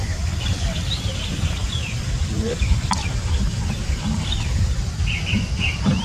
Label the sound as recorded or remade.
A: remade